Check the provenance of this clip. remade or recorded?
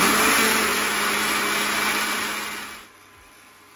recorded